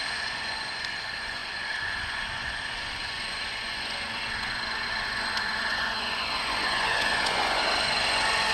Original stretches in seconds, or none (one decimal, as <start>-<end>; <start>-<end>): none